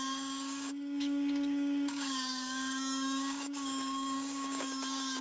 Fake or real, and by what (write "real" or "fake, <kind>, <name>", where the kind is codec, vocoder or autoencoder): fake, codec, DAC